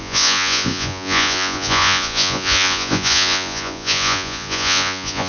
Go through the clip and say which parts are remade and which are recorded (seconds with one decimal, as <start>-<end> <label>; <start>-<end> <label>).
0.0-5.3 remade